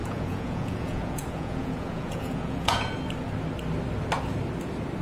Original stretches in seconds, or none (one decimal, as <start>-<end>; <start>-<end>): 3.0-5.0